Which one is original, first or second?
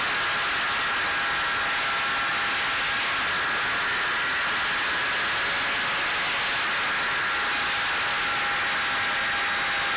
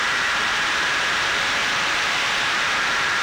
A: first